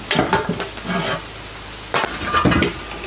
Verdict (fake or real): real